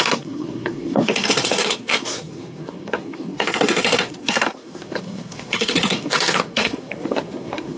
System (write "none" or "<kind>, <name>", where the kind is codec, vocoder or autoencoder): codec, SNAC